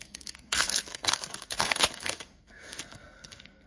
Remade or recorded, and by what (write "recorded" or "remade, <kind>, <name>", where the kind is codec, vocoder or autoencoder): remade, codec, SNAC